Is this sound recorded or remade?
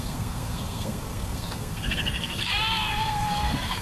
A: remade